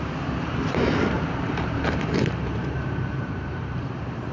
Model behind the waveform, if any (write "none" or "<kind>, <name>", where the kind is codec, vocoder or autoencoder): vocoder, BigVGAN v2